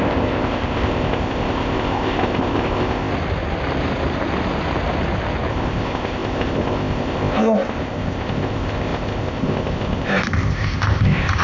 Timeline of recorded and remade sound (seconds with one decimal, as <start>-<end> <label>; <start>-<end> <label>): 0.0-3.1 remade; 3.1-5.5 recorded; 5.5-11.4 remade